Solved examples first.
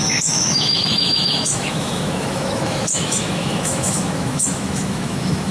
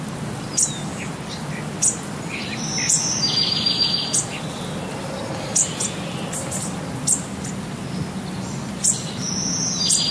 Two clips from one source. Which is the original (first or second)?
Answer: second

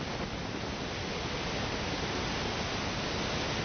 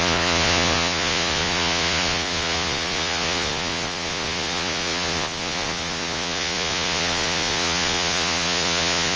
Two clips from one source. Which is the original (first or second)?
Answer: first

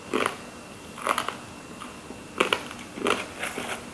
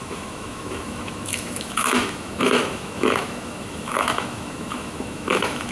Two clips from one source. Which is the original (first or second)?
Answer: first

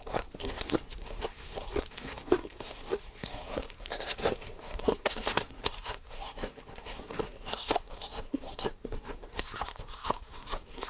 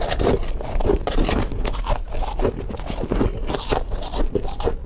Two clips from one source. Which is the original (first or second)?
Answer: second